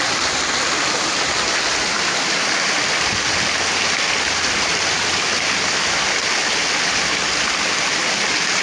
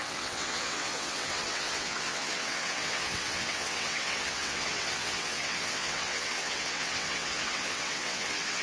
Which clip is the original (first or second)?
first